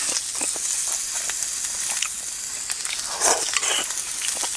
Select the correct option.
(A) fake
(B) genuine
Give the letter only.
B